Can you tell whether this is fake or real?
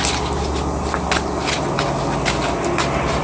real